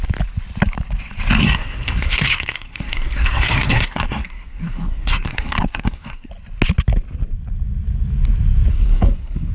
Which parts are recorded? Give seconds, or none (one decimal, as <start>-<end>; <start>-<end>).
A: 0.0-1.4; 6.3-8.7